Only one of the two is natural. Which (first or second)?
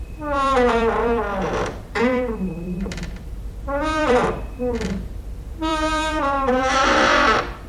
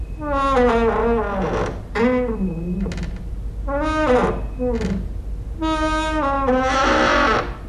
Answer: second